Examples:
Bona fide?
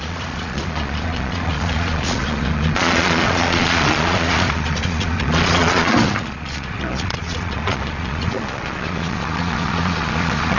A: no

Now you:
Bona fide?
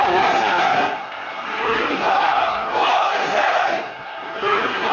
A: no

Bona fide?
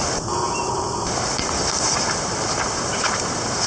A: yes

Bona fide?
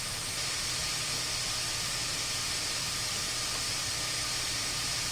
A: no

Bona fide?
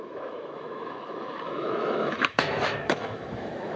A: no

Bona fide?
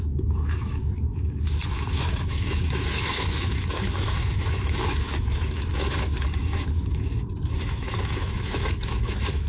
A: no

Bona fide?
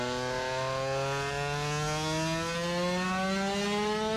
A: yes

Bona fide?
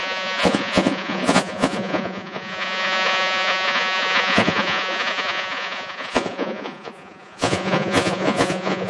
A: no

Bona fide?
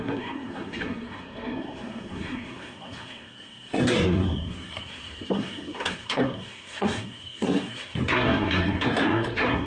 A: no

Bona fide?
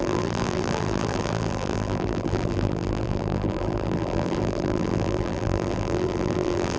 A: no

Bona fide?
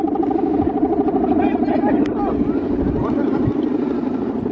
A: yes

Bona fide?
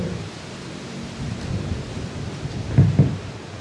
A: no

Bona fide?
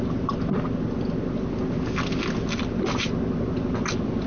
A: yes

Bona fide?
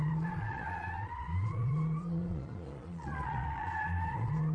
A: no